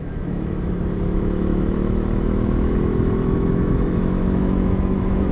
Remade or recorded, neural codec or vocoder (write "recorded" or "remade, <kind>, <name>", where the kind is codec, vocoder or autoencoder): remade, autoencoder, DAC-VAE